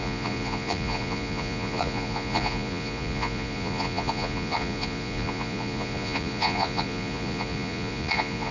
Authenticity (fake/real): fake